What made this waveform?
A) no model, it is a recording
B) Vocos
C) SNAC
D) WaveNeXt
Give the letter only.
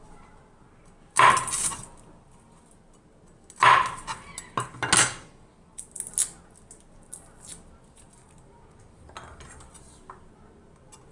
A